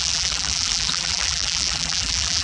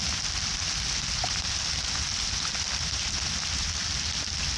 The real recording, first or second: second